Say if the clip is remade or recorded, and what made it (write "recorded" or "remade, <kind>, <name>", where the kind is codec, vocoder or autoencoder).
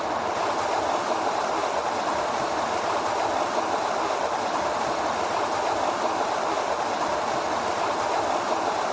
recorded